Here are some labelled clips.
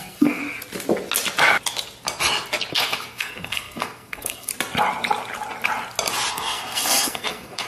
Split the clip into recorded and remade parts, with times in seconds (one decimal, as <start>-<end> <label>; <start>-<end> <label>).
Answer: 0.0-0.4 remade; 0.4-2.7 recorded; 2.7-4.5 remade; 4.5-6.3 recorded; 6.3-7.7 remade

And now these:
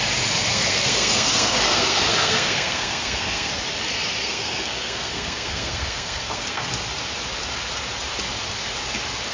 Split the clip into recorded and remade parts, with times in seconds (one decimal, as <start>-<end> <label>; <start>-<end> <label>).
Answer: 0.0-0.5 recorded; 0.5-3.5 remade; 3.5-4.2 recorded; 4.2-6.7 remade; 6.7-9.3 recorded

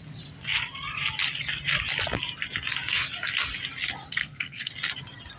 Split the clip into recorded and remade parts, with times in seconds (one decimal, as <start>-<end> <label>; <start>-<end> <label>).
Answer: 0.0-4.2 recorded; 4.2-4.7 remade; 4.7-5.4 recorded

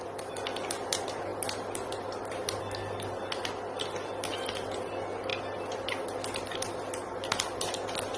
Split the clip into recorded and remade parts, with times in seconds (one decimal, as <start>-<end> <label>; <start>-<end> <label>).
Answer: 0.0-8.2 recorded

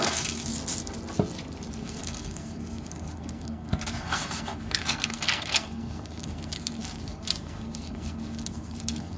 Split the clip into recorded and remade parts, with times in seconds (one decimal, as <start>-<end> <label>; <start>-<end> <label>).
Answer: 0.0-0.5 remade; 0.5-1.7 recorded; 1.7-9.2 remade

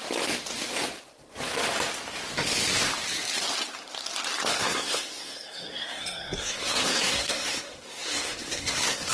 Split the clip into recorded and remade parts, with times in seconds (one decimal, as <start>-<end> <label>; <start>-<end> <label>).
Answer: 0.0-4.5 recorded; 4.5-9.1 remade

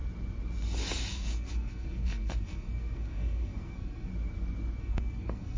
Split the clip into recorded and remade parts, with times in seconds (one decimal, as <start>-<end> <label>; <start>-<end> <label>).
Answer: 0.0-1.1 recorded; 1.1-4.1 remade; 4.1-4.8 recorded; 4.8-5.6 remade

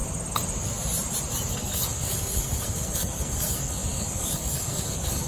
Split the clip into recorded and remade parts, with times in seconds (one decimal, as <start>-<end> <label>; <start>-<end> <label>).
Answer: 0.0-1.5 recorded; 1.5-5.3 remade